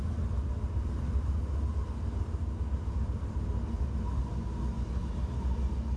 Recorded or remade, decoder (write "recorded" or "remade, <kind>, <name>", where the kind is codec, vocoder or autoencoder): recorded